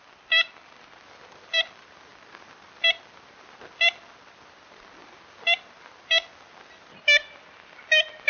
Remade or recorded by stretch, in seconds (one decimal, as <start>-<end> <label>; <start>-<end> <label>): 0.0-8.3 recorded